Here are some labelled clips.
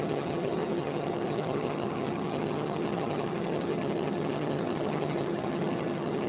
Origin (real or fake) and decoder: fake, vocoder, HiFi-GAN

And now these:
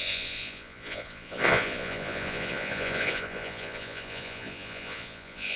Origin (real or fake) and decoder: fake, vocoder, Vocos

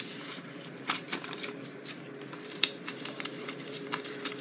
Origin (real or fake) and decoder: fake, vocoder, BigVGAN v2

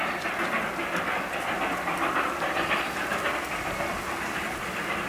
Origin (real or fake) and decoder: real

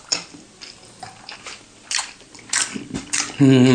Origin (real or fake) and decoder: real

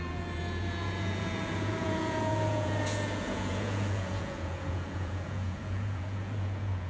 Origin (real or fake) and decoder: fake, vocoder, Vocos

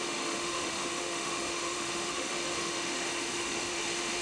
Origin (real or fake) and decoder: fake, autoencoder, DAC-VAE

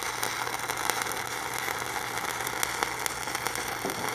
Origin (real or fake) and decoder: real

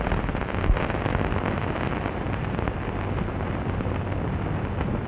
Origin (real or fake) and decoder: real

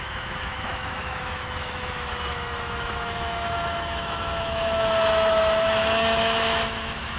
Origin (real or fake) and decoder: fake, autoencoder, DAC-VAE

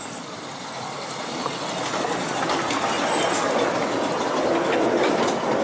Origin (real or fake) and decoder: real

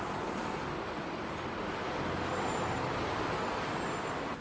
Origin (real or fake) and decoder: real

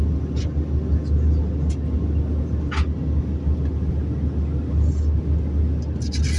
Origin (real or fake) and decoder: real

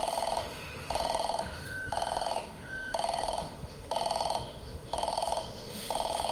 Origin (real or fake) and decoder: fake, autoencoder, DAC-VAE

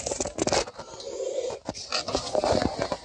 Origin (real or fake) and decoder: real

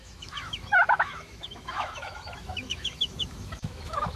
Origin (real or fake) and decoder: fake, autoencoder, DAC-VAE